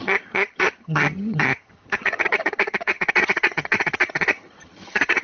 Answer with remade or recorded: remade